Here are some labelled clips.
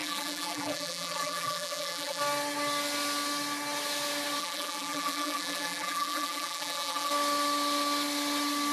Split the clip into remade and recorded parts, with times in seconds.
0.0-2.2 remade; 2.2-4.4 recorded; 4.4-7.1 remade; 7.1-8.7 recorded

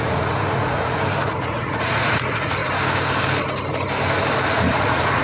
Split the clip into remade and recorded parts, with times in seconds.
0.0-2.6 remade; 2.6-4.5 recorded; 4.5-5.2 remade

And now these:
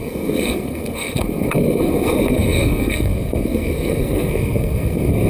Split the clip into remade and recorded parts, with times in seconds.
0.0-5.3 remade

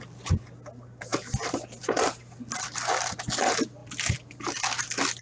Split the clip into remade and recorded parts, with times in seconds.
0.0-5.2 recorded

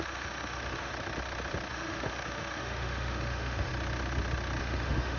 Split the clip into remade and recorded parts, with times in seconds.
0.0-0.9 remade; 0.9-1.7 recorded; 1.7-3.7 remade; 3.7-4.6 recorded; 4.6-5.2 remade